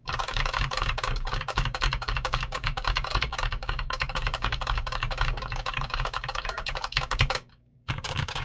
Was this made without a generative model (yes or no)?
no